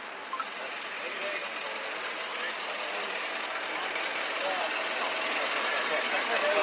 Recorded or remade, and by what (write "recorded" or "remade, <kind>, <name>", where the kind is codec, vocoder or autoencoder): recorded